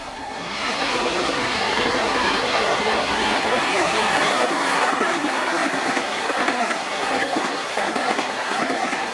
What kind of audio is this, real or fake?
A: fake